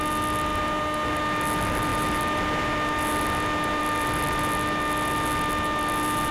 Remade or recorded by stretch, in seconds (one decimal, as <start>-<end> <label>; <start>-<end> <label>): 0.0-6.3 recorded